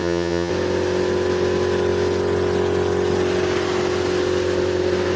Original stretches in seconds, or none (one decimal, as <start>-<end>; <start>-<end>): 0.5-5.2